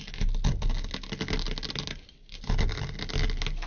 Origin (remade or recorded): recorded